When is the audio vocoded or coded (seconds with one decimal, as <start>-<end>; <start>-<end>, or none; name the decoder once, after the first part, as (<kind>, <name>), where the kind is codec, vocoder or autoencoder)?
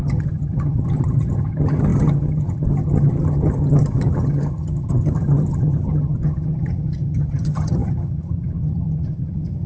0.0-9.7 (vocoder, HiFi-GAN)